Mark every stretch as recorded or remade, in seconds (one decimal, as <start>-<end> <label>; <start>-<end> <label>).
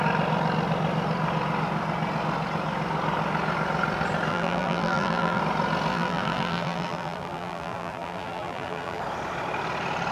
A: 0.0-4.3 recorded; 4.3-5.4 remade; 5.4-5.9 recorded; 5.9-9.0 remade; 9.0-10.1 recorded